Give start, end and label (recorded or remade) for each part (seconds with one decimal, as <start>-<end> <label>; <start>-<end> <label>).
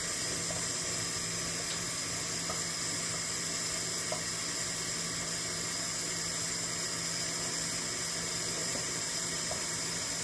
0.0-8.6 recorded; 8.6-10.2 remade